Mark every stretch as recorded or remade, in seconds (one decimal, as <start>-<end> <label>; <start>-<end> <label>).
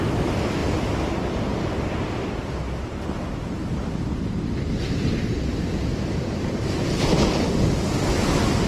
0.0-8.7 recorded